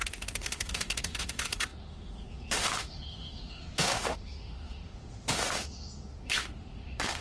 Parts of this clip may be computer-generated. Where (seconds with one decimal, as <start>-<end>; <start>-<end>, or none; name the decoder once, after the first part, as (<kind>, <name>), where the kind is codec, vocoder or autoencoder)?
0.0-7.2 (autoencoder, DAC-VAE)